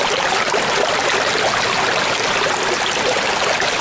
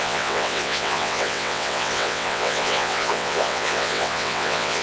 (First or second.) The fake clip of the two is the second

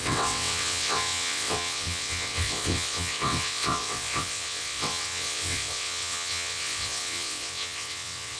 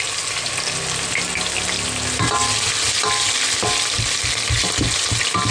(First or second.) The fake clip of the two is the first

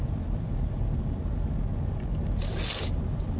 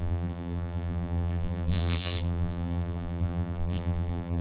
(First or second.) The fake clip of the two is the second